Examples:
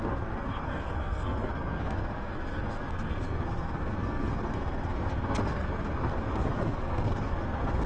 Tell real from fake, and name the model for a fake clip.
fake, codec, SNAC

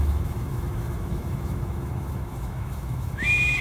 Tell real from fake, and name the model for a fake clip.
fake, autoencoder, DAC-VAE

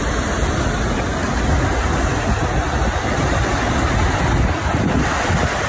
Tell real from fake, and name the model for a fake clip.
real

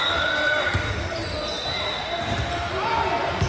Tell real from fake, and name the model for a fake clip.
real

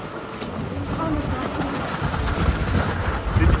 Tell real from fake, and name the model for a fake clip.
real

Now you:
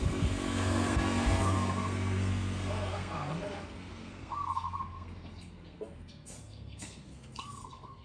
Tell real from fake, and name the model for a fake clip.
fake, codec, SNAC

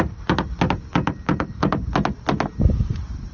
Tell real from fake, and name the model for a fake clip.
real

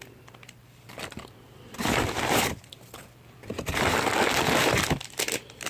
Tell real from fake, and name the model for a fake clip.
real